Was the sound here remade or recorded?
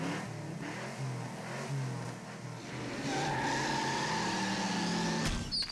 recorded